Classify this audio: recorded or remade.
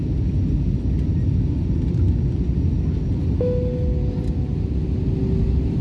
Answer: recorded